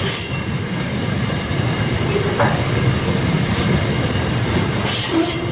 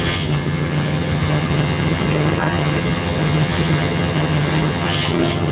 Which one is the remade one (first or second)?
second